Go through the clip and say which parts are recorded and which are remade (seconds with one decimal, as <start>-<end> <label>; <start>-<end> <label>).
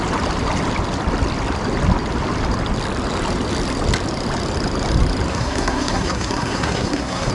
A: 0.0-5.3 recorded; 5.3-7.3 remade